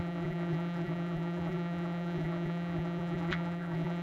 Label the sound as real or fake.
fake